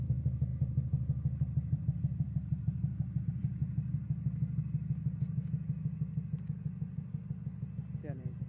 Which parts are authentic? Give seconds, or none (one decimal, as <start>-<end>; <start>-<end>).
3.6-8.0